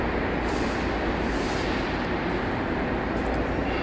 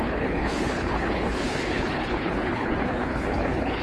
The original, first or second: first